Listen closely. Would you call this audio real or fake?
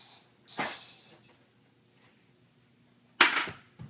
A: real